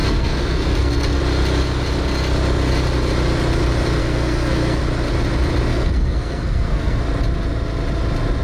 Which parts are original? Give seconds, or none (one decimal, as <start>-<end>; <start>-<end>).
1.2-4.0; 4.8-5.7; 7.0-8.4